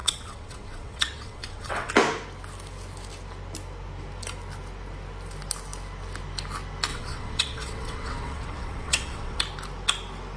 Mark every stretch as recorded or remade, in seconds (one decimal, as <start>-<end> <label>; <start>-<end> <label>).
0.0-1.9 remade; 1.9-6.9 recorded; 6.9-9.4 remade; 9.4-10.4 recorded

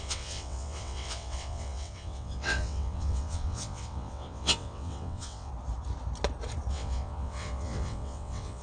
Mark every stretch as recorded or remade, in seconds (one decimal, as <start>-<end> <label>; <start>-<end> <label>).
0.0-5.5 remade; 5.5-6.7 recorded; 6.7-8.6 remade